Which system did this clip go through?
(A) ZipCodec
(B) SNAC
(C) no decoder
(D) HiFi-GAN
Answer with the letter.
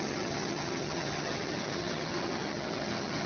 D